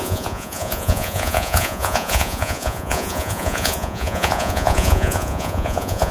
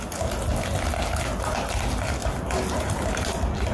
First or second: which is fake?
first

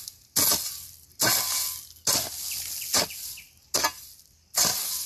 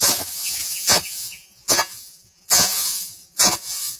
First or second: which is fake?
second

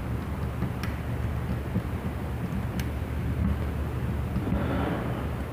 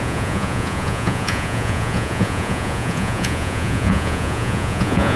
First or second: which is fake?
second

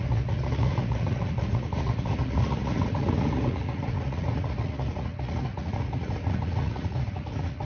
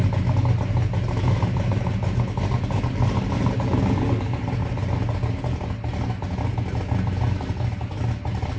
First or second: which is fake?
first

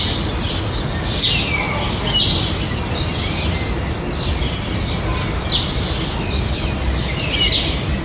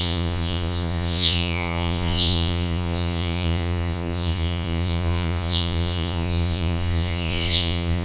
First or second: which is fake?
second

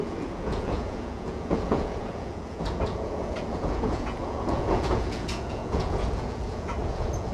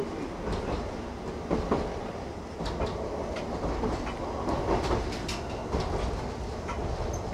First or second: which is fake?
first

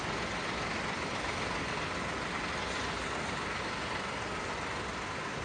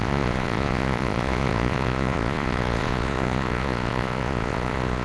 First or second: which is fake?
second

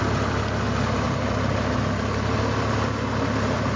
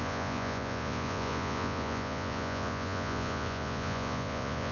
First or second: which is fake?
second